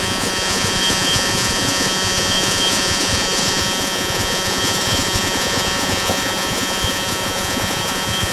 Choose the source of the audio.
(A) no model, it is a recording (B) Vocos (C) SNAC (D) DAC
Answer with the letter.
B